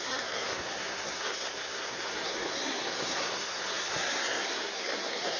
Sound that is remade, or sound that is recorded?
remade